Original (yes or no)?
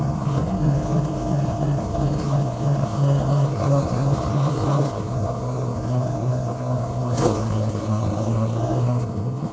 no